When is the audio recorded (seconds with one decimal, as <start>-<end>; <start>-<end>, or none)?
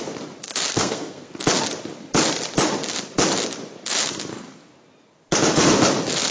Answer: 0.0-0.7; 1.3-6.3